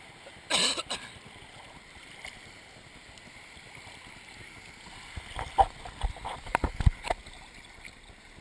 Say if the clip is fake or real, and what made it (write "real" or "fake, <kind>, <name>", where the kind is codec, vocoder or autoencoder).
real